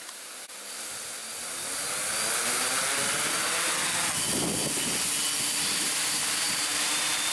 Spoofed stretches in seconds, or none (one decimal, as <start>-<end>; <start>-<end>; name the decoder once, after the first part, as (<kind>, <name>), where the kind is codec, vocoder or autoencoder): 0.0-1.2 (vocoder, BigVGAN v2); 5.6-7.3